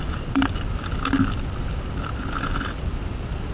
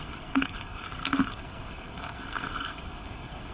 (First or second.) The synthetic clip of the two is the second